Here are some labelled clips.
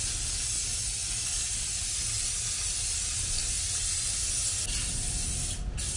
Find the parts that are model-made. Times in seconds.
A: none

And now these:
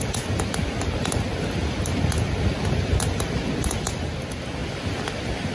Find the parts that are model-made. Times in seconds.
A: none

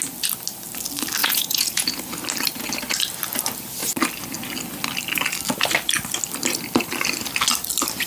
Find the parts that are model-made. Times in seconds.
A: 1.2-2.1 (vocoder, Vocos)

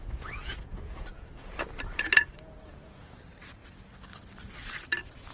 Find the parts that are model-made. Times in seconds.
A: 0.0-3.2 (vocoder, Vocos)

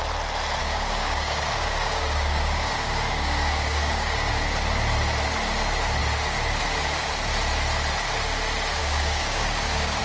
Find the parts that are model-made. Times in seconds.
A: 0.6-4.3 (codec, DAC); 8.8-10.0

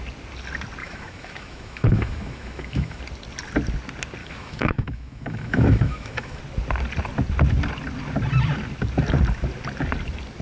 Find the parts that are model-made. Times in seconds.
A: 0.8-3.0 (autoencoder, DAC-VAE); 4.2-6.4

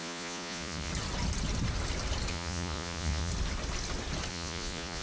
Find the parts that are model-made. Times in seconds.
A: 0.0-0.9 (vocoder, Vocos); 2.3-3.3; 4.3-5.0